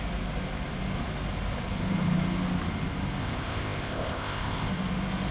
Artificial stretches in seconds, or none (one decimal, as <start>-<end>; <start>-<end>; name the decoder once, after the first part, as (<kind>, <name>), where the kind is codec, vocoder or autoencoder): 3.2-4.7 (codec, ZipCodec)